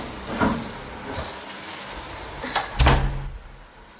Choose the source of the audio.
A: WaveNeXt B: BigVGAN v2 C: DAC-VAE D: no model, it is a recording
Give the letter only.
D